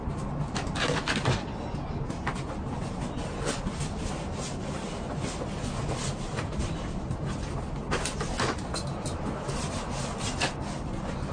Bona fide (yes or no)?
yes